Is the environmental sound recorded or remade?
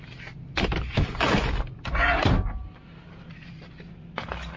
recorded